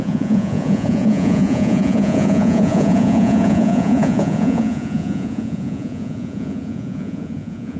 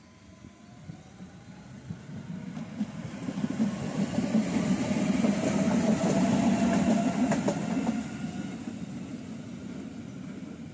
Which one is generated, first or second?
first